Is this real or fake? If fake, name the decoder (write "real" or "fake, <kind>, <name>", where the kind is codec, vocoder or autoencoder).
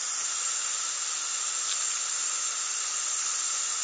real